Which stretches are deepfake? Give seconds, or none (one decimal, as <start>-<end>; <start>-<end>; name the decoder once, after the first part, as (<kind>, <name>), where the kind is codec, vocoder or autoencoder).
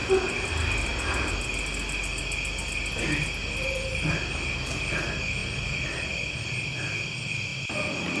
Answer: 0.0-0.5 (vocoder, BigVGAN v2); 5.4-6.8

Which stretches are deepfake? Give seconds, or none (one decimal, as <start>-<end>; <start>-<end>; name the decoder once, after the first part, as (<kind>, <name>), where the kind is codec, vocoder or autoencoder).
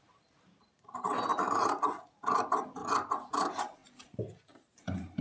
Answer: 0.0-2.8 (vocoder, BigVGAN v2); 3.3-3.8; 4.4-5.2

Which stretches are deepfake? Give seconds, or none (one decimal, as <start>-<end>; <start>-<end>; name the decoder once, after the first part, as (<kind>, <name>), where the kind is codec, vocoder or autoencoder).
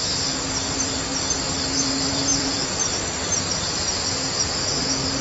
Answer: 2.3-4.8 (vocoder, BigVGAN v2)